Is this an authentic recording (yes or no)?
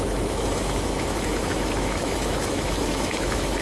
no